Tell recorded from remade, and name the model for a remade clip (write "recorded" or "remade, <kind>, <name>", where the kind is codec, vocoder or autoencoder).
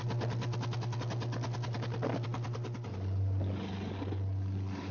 recorded